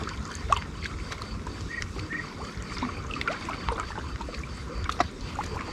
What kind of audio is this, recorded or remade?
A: recorded